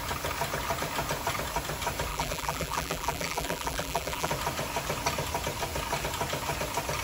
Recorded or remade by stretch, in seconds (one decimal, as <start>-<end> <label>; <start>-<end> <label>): 0.0-2.1 recorded; 2.1-4.3 remade; 4.3-7.0 recorded